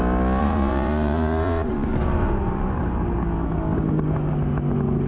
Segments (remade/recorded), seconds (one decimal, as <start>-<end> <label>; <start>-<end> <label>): 0.0-0.4 recorded; 0.4-2.7 remade; 2.7-5.1 recorded